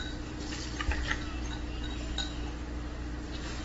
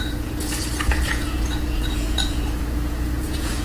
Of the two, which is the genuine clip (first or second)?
first